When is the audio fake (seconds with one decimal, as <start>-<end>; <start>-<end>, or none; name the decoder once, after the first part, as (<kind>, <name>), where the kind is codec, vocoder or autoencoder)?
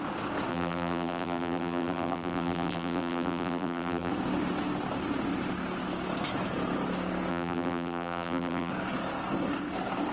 0.5-4.1 (vocoder, BigVGAN v2); 7.3-8.7